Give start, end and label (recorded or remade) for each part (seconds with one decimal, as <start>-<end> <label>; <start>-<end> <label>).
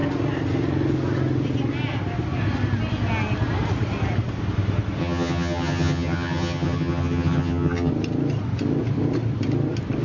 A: 0.0-5.0 recorded; 5.0-7.9 remade; 7.9-10.0 recorded